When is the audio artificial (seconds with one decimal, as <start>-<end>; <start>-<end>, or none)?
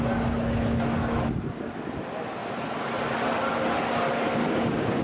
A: 4.4-5.0